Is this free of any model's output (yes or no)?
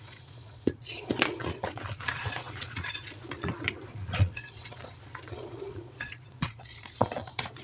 no